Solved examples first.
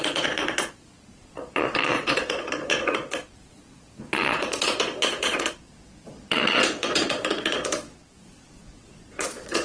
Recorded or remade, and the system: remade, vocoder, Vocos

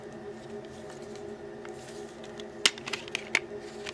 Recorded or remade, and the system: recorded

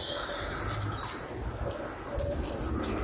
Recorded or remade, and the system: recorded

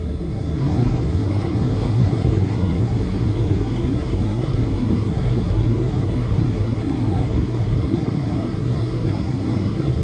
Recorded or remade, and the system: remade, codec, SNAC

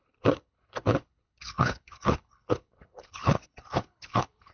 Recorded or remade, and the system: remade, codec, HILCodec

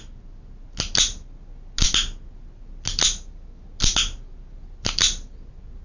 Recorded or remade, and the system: recorded